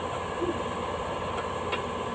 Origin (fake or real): real